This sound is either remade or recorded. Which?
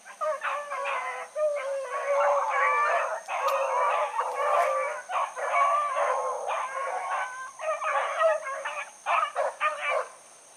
recorded